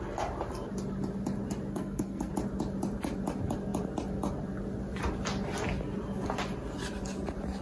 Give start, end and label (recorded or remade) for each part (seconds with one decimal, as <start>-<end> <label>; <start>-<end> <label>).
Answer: 0.0-1.7 recorded; 1.7-2.3 remade; 2.3-7.6 recorded